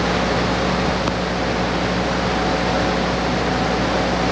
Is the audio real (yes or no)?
yes